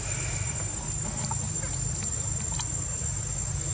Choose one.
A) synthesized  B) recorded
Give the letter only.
B